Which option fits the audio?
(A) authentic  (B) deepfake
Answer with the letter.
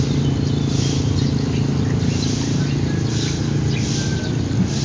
A